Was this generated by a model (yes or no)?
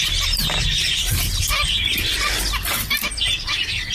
no